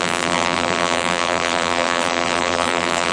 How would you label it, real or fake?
fake